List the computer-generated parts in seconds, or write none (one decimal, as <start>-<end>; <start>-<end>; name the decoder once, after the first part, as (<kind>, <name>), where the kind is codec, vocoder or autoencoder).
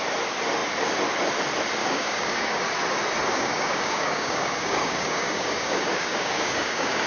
1.8-2.6 (codec, DAC); 3.3-7.1